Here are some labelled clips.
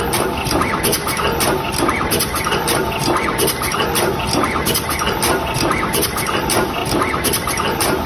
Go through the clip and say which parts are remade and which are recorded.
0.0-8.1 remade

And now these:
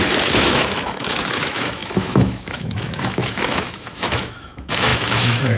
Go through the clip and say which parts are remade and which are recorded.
0.0-5.6 remade

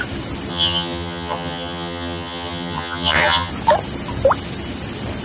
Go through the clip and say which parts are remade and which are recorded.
0.0-0.5 recorded; 0.5-3.5 remade; 3.5-5.2 recorded

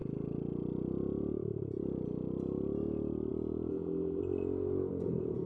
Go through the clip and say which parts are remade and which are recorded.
0.0-3.7 recorded; 3.7-4.2 remade; 4.2-5.5 recorded

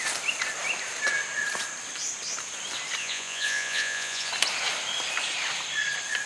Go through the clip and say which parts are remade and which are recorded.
0.0-3.0 recorded; 3.0-4.3 remade; 4.3-6.3 recorded

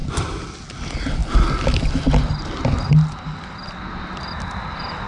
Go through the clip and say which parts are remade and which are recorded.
0.0-0.5 remade; 0.5-5.1 recorded

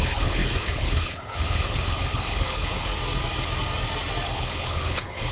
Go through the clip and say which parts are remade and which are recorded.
0.0-2.9 remade; 2.9-4.3 recorded; 4.3-5.3 remade

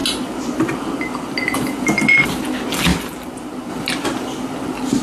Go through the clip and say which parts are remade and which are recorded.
0.0-0.9 remade; 0.9-2.9 recorded; 2.9-3.7 remade; 3.7-5.0 recorded